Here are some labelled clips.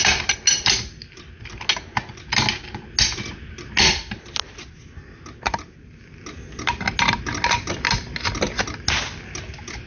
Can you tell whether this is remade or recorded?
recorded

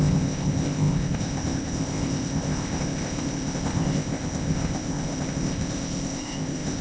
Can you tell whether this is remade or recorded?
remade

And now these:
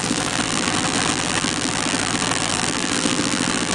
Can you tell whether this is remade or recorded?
remade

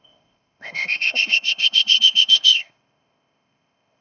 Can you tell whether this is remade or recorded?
remade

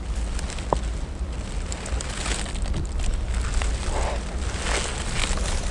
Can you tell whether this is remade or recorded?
recorded